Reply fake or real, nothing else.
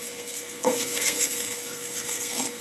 fake